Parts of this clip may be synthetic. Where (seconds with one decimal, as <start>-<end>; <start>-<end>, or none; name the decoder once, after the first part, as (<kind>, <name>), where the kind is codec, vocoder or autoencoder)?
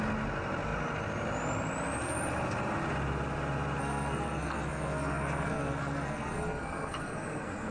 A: 3.8-7.7 (codec, SNAC)